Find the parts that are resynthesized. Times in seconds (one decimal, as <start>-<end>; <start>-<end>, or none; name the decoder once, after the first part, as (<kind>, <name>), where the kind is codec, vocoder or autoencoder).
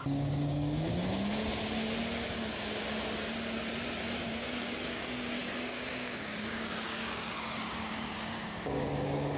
0.0-1.0 (codec, DAC); 4.2-9.4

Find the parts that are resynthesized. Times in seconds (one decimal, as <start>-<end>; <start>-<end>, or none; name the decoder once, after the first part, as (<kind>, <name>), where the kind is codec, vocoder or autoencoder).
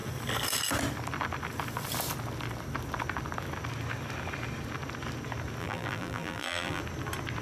5.6-6.8 (vocoder, BigVGAN v2)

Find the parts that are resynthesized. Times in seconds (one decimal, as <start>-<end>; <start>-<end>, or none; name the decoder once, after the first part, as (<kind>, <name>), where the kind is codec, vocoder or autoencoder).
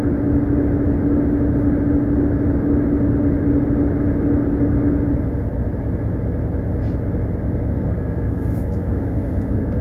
7.7-9.8 (codec, SNAC)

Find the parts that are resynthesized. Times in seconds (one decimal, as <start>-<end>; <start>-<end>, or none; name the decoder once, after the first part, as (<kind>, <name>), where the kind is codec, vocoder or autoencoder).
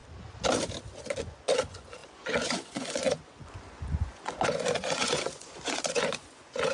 1.2-6.7 (vocoder, Vocos)